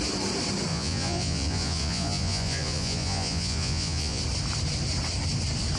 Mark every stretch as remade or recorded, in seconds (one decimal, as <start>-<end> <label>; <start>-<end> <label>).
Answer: 0.0-0.7 recorded; 0.7-4.2 remade; 4.2-5.8 recorded